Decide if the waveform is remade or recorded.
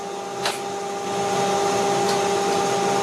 recorded